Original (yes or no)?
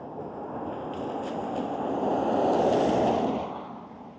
yes